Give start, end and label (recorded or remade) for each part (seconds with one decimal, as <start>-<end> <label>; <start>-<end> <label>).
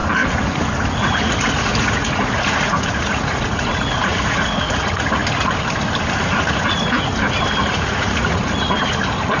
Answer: 0.0-0.9 recorded; 0.9-5.2 remade; 5.2-6.4 recorded; 6.4-7.1 remade; 7.1-7.7 recorded; 7.7-8.4 remade; 8.4-9.4 recorded